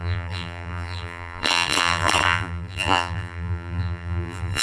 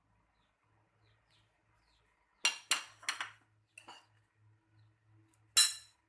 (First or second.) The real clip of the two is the second